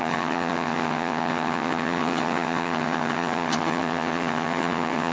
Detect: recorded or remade remade